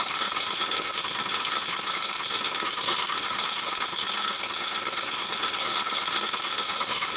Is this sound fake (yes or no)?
yes